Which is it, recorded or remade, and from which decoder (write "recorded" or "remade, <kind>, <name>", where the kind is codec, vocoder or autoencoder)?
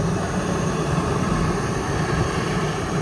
remade, vocoder, BigVGAN v2